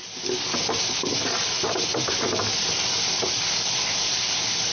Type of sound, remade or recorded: recorded